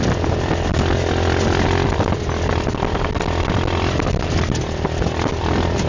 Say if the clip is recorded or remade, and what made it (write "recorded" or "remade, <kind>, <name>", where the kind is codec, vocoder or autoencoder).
remade, vocoder, BigVGAN v2